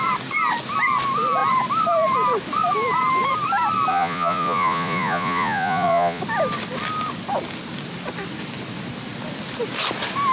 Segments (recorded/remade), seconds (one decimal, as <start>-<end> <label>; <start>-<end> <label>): 0.0-3.9 recorded; 3.9-6.2 remade; 6.2-10.3 recorded